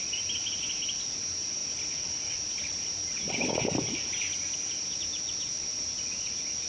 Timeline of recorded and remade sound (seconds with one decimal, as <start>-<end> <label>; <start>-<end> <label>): 0.0-6.7 recorded